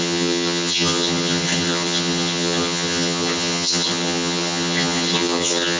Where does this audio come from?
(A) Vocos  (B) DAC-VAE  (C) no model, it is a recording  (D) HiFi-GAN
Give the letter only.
D